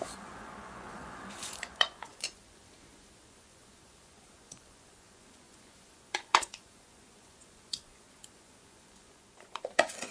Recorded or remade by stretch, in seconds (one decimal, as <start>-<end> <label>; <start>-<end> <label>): 0.0-10.1 remade